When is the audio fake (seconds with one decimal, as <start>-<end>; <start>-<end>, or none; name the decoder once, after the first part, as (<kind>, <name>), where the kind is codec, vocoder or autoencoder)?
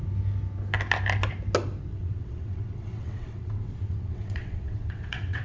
1.9-5.4 (vocoder, WaveNeXt)